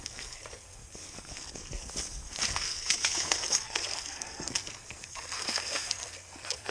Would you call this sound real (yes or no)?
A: no